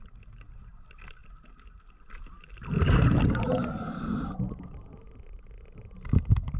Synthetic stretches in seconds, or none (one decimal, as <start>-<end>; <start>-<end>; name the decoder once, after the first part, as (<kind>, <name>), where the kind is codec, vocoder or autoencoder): none